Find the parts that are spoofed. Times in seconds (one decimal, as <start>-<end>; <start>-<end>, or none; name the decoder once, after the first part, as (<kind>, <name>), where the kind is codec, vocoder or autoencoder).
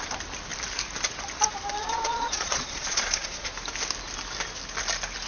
1.8-3.5 (vocoder, Vocos)